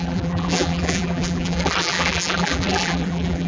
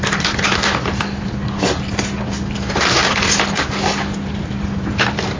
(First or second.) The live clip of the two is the second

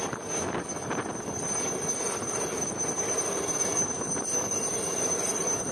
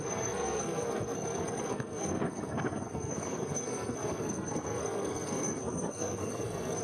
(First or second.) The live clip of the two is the first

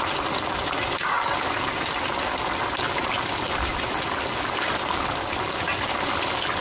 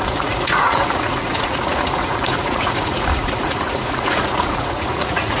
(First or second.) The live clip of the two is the first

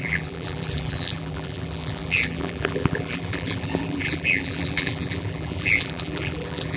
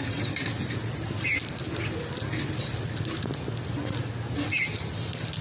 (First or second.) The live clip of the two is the second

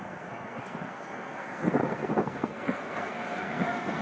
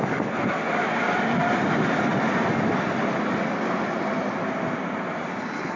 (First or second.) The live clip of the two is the second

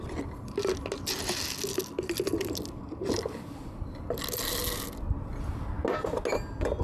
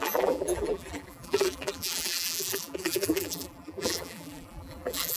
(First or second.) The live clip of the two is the first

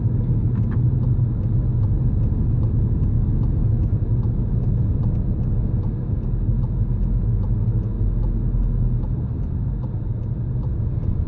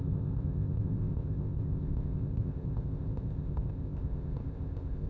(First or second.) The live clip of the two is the first